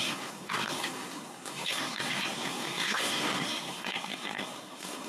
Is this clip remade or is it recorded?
remade